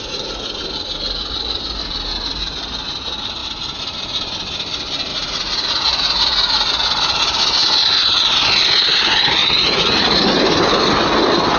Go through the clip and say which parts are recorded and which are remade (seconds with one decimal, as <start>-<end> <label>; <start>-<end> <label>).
0.0-0.5 remade; 0.5-5.1 recorded; 5.1-6.7 remade; 6.7-9.4 recorded; 9.4-10.2 remade; 10.2-11.6 recorded